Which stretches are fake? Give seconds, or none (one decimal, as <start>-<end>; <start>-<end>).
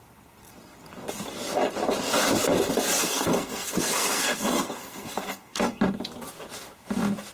3.0-5.8